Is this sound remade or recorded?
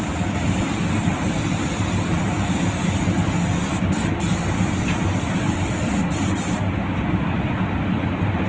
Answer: recorded